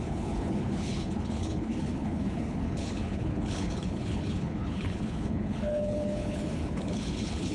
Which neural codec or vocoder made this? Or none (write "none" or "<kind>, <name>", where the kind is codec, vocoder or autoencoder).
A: codec, HILCodec